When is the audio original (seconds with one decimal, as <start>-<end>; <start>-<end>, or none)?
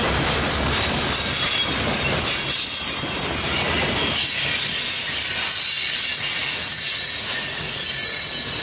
0.0-6.1; 7.8-8.6